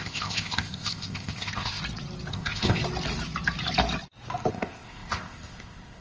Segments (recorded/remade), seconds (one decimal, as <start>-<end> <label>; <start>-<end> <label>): 0.0-1.8 remade; 1.8-2.3 recorded; 2.3-2.8 remade; 2.8-4.5 recorded; 4.5-6.0 remade